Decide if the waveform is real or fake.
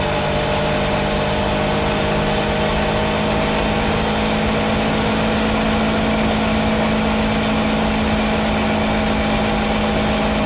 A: real